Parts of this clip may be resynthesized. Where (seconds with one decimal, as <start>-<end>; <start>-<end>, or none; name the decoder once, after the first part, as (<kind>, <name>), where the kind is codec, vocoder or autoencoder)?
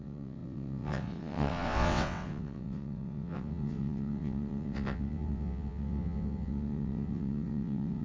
0.0-8.0 (vocoder, WaveNeXt)